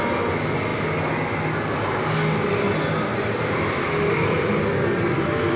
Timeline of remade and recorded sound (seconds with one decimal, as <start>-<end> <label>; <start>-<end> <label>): 0.0-5.6 recorded